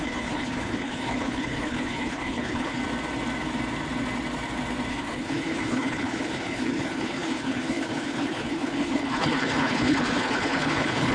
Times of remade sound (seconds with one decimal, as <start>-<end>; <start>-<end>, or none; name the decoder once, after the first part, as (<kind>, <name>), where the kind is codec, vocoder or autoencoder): 0.0-2.8 (codec, HILCodec); 4.9-11.1